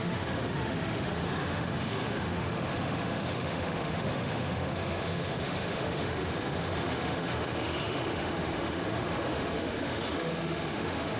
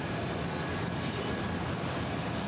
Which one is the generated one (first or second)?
first